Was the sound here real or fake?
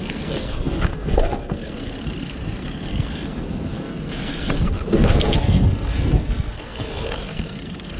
fake